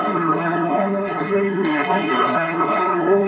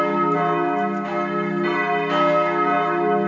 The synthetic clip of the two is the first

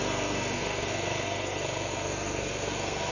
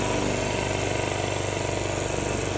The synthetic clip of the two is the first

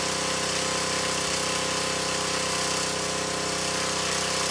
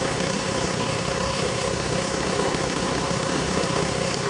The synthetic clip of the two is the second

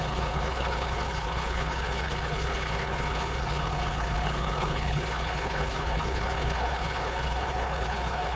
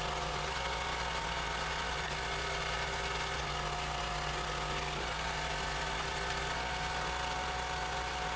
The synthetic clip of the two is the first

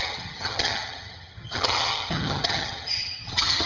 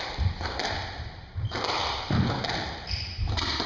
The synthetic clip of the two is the first